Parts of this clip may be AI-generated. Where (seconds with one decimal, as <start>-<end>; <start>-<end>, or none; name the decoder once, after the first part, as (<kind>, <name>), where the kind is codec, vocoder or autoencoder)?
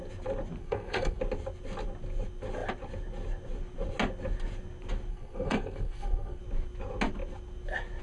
0.6-1.2 (codec, SNAC); 5.1-6.4